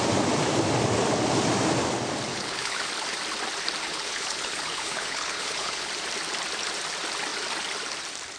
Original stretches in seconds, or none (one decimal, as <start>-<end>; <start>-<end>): 0.0-2.3; 2.9-3.8; 5.9-8.4